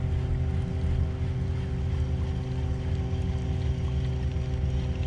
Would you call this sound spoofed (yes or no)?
no